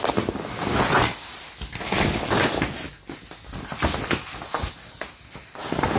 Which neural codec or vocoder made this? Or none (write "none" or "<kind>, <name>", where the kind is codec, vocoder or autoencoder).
none